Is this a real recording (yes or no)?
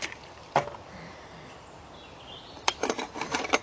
no